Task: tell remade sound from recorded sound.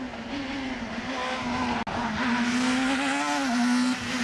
recorded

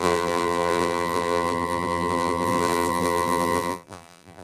remade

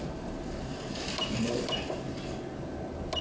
recorded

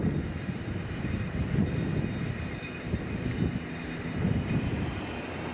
recorded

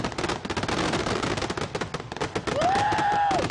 recorded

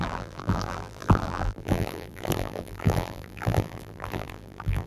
remade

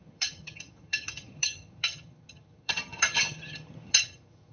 remade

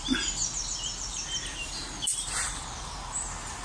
recorded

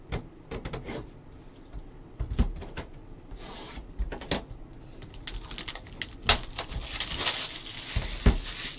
recorded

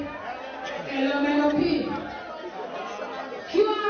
recorded